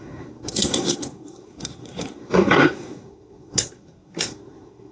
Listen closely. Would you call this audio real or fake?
fake